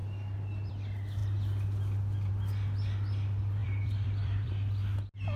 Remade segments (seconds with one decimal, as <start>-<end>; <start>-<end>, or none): 3.6-4.5